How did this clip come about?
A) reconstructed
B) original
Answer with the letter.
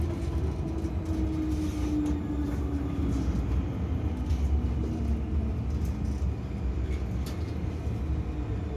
B